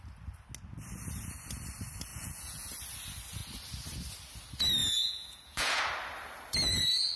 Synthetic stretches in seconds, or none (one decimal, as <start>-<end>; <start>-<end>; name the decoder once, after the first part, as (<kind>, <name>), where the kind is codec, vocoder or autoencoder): 2.1-2.7 (vocoder, Vocos); 4.8-5.8